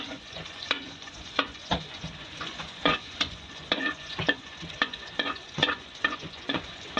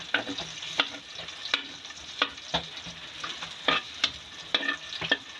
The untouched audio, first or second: second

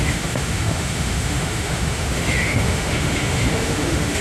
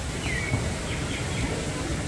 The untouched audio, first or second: second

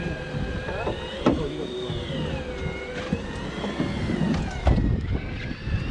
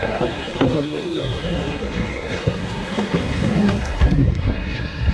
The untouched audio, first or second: first